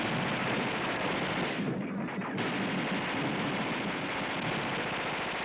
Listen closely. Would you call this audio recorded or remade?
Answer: recorded